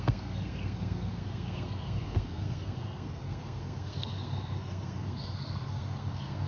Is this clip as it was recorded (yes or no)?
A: no